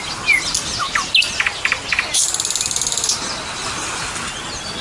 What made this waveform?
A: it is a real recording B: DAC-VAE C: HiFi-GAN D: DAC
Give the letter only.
A